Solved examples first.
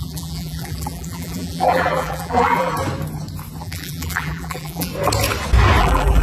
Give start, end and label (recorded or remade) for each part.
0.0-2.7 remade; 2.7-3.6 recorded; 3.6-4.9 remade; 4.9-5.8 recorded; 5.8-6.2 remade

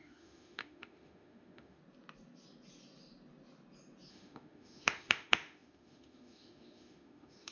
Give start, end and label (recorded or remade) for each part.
0.0-1.8 remade; 1.8-4.1 recorded; 4.1-7.5 remade

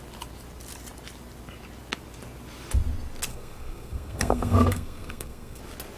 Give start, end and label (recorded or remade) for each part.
0.0-3.3 recorded; 3.3-5.6 remade; 5.6-6.0 recorded

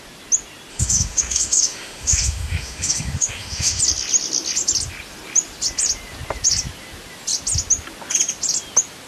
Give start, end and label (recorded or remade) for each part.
0.0-0.7 recorded; 0.7-3.8 remade; 3.8-9.1 recorded

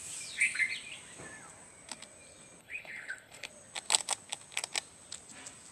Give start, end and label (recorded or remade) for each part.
0.0-2.6 recorded; 2.6-3.5 remade; 3.5-5.7 recorded